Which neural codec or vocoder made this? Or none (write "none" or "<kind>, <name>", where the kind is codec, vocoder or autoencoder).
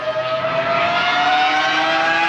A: none